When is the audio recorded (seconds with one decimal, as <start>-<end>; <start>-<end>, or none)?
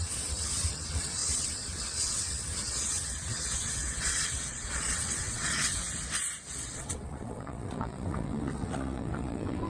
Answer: 5.8-6.5